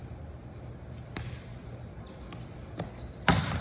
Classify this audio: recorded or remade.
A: recorded